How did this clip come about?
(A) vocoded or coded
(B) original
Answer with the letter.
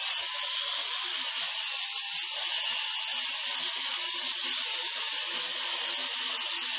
B